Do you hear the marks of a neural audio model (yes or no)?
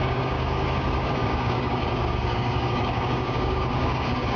yes